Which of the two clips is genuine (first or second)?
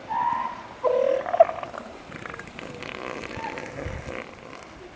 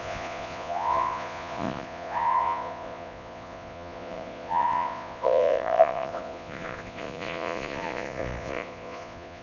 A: first